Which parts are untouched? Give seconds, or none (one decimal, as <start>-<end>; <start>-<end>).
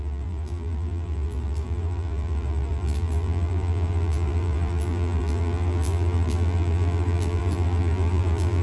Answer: none